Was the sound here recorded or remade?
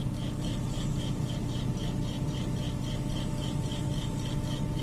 remade